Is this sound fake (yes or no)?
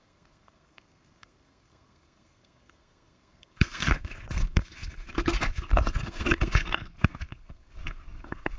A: yes